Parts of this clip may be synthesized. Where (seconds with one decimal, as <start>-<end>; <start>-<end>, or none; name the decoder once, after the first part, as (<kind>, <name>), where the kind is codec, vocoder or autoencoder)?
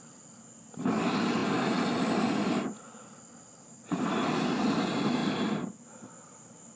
none